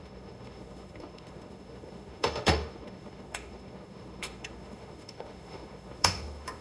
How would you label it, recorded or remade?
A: remade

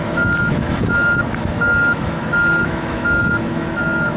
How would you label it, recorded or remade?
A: remade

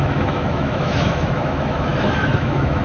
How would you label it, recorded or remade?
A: remade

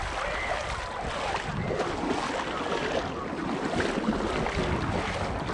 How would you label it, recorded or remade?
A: recorded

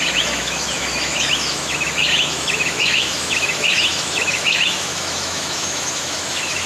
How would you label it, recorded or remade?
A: remade